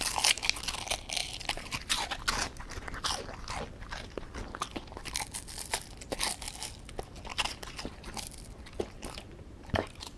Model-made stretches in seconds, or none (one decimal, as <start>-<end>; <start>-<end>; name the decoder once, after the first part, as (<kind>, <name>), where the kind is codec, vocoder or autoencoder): 1.2-4.9 (vocoder, BigVGAN v2); 7.3-8.3